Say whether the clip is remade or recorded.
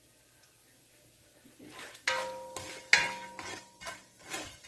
recorded